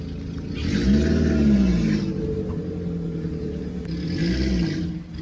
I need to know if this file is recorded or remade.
recorded